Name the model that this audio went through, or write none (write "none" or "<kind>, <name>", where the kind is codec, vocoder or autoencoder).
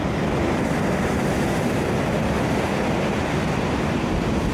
none